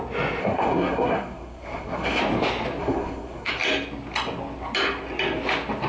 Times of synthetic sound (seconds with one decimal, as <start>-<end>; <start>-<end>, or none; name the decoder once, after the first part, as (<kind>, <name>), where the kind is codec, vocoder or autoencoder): 0.4-2.2 (codec, SNAC); 2.8-3.5

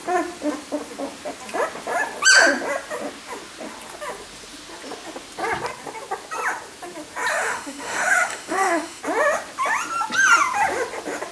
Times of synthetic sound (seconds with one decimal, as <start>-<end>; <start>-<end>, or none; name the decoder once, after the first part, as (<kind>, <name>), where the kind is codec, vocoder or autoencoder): 7.3-9.0 (autoencoder, DAC-VAE)

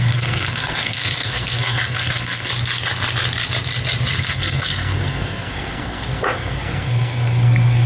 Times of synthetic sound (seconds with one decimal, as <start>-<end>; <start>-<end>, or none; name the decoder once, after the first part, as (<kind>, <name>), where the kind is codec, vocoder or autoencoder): 0.0-2.5 (codec, SNAC); 4.2-7.9